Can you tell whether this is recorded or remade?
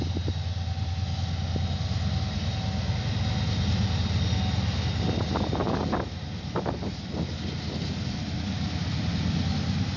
recorded